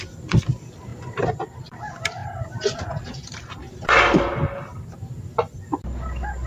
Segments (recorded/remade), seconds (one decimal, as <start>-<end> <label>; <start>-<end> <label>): 0.0-2.2 recorded; 2.2-4.3 remade; 4.3-6.5 recorded